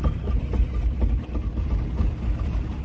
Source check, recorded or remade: recorded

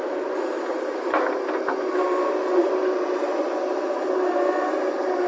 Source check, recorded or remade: recorded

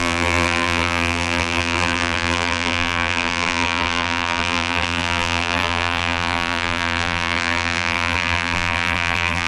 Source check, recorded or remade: remade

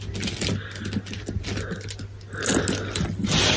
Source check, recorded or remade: recorded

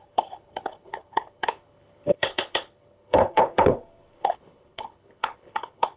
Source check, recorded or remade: remade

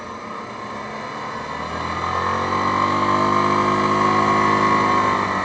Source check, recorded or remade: recorded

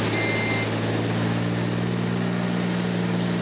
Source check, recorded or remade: recorded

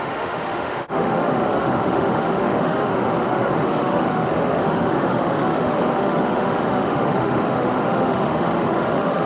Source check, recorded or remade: remade